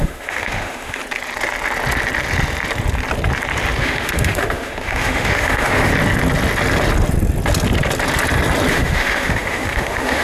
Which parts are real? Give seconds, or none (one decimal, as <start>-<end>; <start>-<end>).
1.0-3.8; 5.9-8.7